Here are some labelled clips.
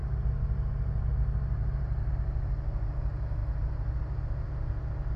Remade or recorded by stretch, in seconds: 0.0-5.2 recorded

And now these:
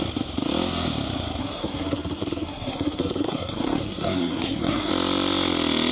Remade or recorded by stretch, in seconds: 0.0-1.4 recorded; 1.4-4.9 remade; 4.9-5.9 recorded